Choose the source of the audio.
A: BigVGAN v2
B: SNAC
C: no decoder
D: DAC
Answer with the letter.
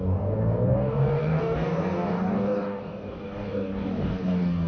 D